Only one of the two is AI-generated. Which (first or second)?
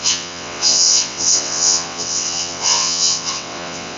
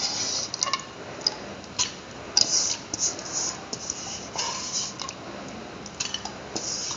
first